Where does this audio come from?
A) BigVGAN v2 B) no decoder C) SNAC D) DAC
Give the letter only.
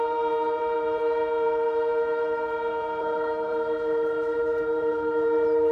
A